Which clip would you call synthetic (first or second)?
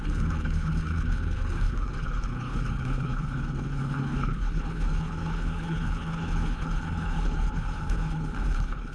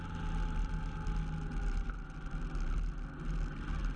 first